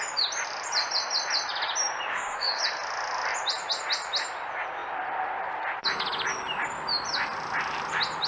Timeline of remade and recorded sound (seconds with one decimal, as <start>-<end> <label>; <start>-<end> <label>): 0.0-2.1 recorded; 2.1-2.6 remade; 2.6-8.3 recorded